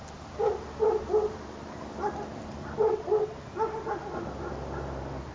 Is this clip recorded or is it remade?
recorded